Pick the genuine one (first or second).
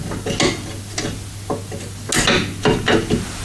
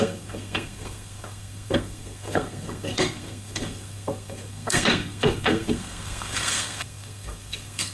first